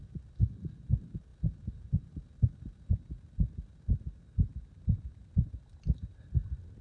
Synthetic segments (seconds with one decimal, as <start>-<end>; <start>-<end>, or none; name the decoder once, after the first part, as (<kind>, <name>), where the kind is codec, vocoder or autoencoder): none